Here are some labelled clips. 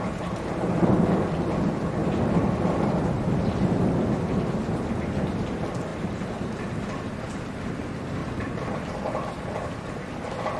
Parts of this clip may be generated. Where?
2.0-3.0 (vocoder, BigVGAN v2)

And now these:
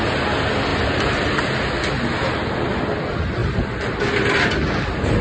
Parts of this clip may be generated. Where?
0.7-1.4 (vocoder, BigVGAN v2); 3.4-4.0

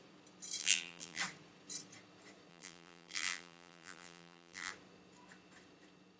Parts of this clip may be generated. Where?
0.6-1.2 (vocoder, BigVGAN v2); 2.5-4.7